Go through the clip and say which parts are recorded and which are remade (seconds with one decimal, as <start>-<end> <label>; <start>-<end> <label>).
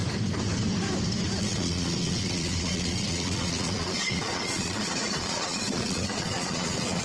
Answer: 0.0-1.4 recorded; 1.4-7.0 remade